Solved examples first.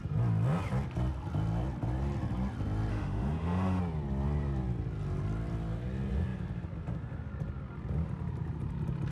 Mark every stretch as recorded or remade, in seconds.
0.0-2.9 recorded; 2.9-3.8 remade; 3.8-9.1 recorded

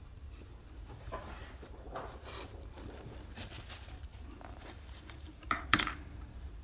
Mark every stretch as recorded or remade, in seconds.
0.0-4.1 recorded; 4.1-6.0 remade; 6.0-6.6 recorded

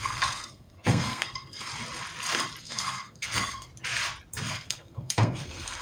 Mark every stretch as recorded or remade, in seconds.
0.0-1.7 remade; 1.7-2.6 recorded; 2.6-3.7 remade; 3.7-4.5 recorded; 4.5-5.8 remade

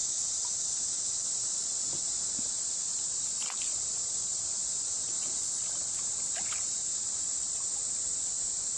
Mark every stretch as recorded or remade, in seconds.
0.0-2.9 recorded; 2.9-6.5 remade; 6.5-8.8 recorded

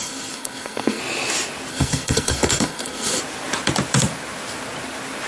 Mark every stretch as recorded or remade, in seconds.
0.0-1.0 remade; 1.0-1.7 recorded; 1.7-3.2 remade; 3.2-5.3 recorded

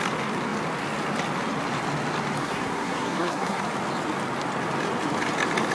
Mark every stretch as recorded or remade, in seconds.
0.0-2.4 recorded; 2.4-3.6 remade; 3.6-5.7 recorded

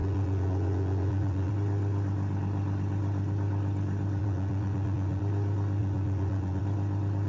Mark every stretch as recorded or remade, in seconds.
0.0-1.5 remade; 1.5-4.2 recorded; 4.2-5.2 remade; 5.2-5.8 recorded; 5.8-6.6 remade; 6.6-7.3 recorded

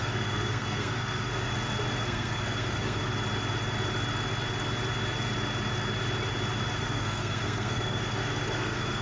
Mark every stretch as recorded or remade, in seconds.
0.0-1.5 remade; 1.5-2.0 recorded; 2.0-3.1 remade; 3.1-6.8 recorded; 6.8-9.0 remade